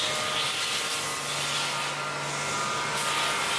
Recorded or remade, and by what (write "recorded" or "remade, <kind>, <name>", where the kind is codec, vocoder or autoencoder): recorded